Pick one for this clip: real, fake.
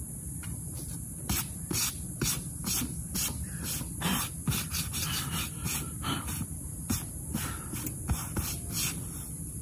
real